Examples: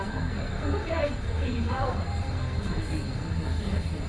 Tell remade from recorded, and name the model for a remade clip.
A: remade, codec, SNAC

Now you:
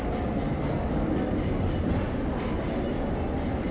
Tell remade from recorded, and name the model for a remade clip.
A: recorded